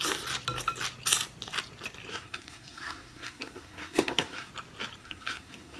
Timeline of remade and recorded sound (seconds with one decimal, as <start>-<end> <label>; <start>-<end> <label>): 0.0-2.1 recorded; 2.1-4.5 remade; 4.5-5.0 recorded; 5.0-5.8 remade